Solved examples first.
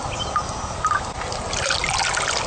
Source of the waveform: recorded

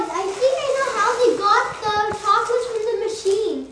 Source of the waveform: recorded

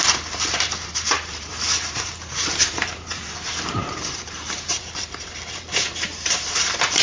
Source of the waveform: remade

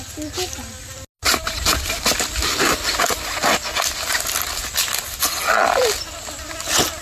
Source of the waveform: recorded